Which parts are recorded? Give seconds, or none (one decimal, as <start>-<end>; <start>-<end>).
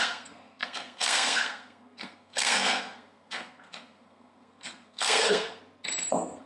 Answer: 5.6-6.1